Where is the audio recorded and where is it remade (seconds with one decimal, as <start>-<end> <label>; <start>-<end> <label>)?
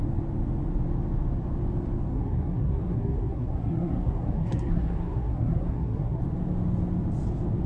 0.0-2.1 recorded; 2.1-6.2 remade; 6.2-7.7 recorded